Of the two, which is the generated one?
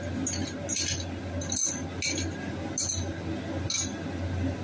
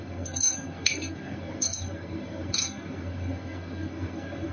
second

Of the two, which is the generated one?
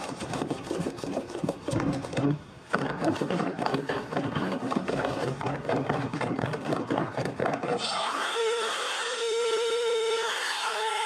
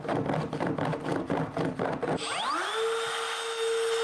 first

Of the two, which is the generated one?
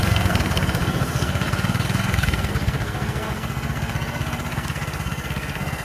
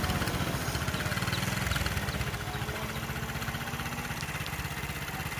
first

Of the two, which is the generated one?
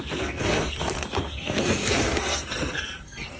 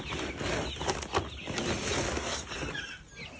first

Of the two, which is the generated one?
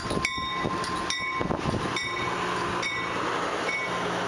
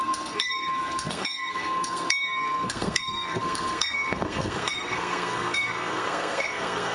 second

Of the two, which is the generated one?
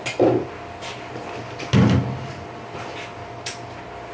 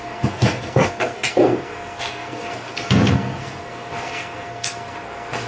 second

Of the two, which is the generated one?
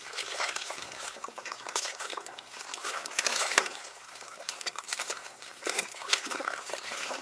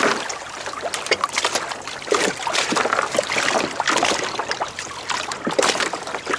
first